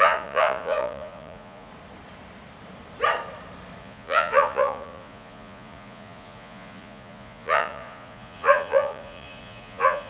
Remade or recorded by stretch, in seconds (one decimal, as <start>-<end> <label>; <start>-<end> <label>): 0.0-1.7 remade; 1.7-3.8 recorded; 3.8-10.1 remade